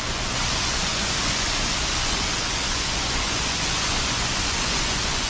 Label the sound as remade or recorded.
remade